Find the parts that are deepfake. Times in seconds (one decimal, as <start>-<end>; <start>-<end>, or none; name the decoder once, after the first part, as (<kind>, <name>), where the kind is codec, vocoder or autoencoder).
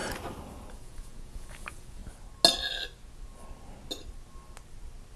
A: 0.7-2.0 (vocoder, Vocos)